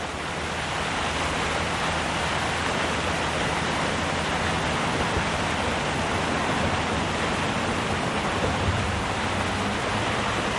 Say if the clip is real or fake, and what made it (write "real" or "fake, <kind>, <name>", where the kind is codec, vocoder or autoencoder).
real